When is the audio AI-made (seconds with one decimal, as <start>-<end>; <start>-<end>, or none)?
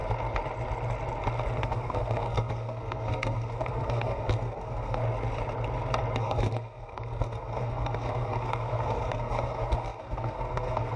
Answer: 1.6-5.0; 6.2-11.0